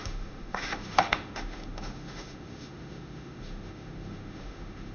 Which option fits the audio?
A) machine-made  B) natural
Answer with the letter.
A